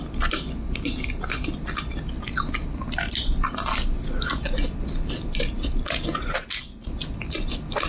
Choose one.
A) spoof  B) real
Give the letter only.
B